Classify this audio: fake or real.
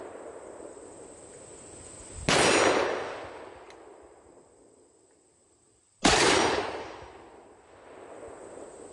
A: real